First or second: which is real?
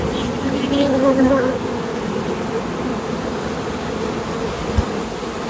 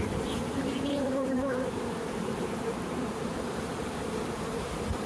first